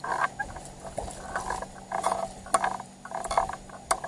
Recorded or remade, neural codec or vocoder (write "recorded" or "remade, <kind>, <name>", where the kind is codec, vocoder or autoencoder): recorded